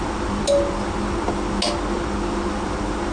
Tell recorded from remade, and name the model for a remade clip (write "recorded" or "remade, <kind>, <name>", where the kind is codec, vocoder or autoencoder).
recorded